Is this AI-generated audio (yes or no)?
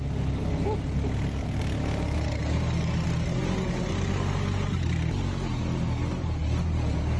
no